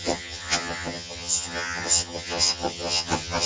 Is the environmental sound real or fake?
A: fake